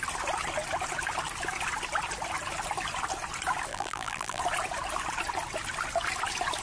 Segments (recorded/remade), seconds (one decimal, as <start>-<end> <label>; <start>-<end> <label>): 0.0-3.7 recorded; 3.7-4.4 remade; 4.4-6.6 recorded

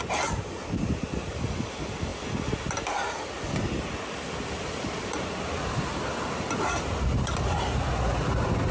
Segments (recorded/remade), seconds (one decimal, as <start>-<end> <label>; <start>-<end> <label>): 0.0-8.7 recorded